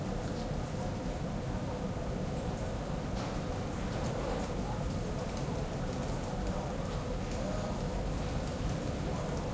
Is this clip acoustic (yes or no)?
yes